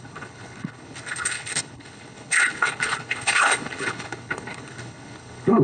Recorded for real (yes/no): no